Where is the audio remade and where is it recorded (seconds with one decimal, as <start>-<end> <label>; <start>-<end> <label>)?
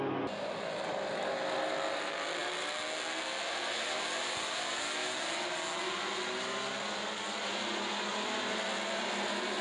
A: 0.0-9.6 recorded